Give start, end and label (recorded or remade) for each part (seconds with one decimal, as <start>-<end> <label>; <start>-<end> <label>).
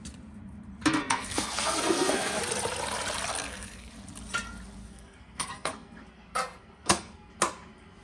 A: 0.0-1.0 recorded; 1.0-2.4 remade; 2.4-3.3 recorded; 3.3-3.9 remade; 3.9-4.8 recorded; 4.8-7.3 remade; 7.3-8.0 recorded